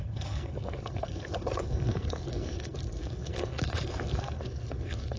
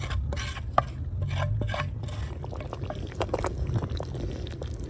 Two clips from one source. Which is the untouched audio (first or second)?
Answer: second